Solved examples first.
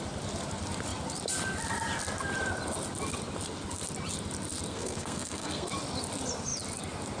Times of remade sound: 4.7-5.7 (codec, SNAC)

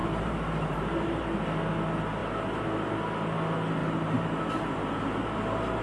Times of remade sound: 0.0-1.2 (vocoder, BigVGAN v2); 3.8-5.8

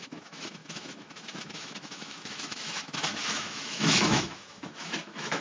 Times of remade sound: 0.0-5.4 (autoencoder, DAC-VAE)

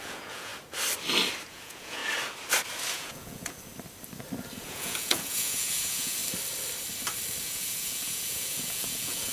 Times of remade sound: 0.0-0.5 (vocoder, Vocos); 1.5-2.0; 2.9-3.7; 4.6-6.2; 7.4-9.3

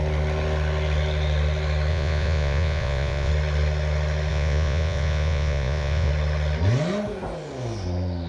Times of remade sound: 1.9-3.3 (vocoder, Vocos); 4.3-6.1

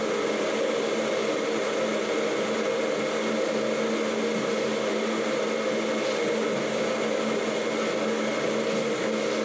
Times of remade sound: none

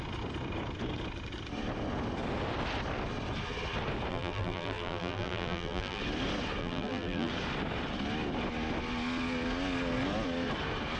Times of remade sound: 4.1-6.0 (vocoder, BigVGAN v2); 6.6-7.3

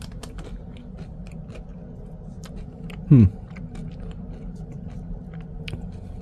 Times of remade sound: 0.0-1.7 (vocoder, BigVGAN v2); 2.3-6.2